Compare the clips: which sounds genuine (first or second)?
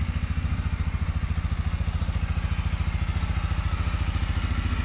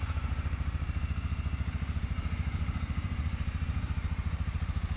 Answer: first